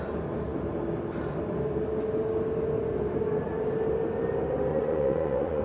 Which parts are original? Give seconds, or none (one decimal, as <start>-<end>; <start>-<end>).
0.0-4.7